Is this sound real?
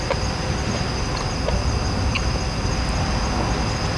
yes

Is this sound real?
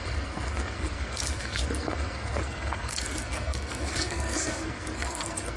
no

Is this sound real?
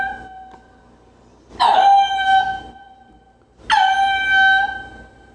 yes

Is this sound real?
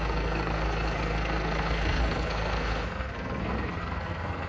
no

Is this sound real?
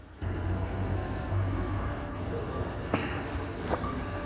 no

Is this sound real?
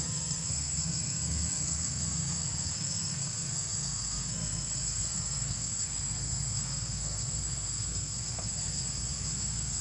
no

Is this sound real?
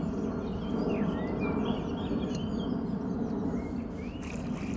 yes